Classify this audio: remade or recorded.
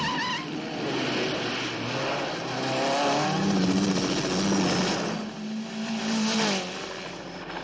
recorded